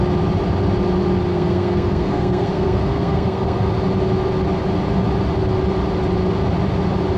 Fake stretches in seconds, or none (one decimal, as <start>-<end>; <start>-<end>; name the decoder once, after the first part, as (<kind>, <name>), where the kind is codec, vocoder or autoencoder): 1.3-3.7 (codec, SNAC)